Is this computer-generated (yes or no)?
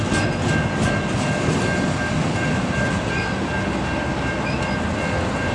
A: no